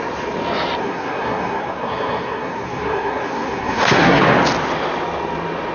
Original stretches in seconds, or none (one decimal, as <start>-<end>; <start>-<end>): 0.0-0.8; 4.2-5.7

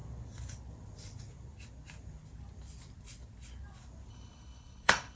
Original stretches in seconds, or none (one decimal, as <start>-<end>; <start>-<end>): 0.0-4.1

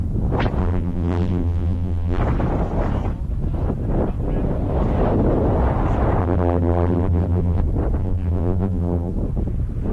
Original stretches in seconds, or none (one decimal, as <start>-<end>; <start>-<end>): 0.0-0.6; 2.2-6.2; 7.6-8.0; 9.1-9.9

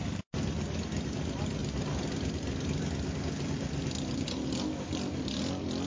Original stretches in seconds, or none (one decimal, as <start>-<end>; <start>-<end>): 0.0-1.6; 3.0-5.9

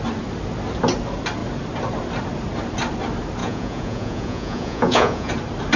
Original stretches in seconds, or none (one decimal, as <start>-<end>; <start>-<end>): 0.0-3.4; 5.3-5.8

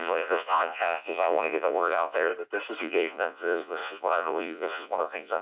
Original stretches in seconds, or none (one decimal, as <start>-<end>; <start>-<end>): 2.3-2.8

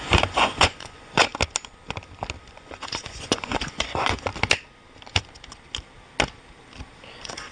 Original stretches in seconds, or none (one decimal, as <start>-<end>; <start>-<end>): 1.3-2.5; 4.3-7.1